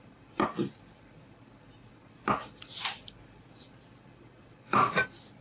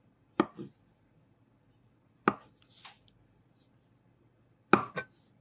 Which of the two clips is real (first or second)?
second